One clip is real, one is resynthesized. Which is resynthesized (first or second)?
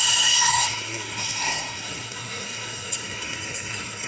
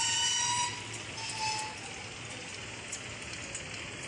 first